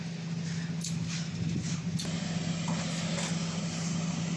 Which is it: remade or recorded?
recorded